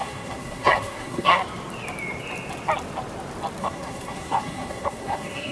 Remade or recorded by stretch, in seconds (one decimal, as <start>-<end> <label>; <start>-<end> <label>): 0.0-1.4 remade; 1.4-3.6 recorded; 3.6-5.5 remade